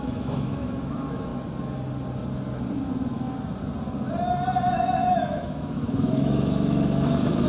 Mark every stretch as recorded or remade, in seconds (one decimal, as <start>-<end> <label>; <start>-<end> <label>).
0.0-1.3 remade; 1.3-4.7 recorded; 4.7-7.5 remade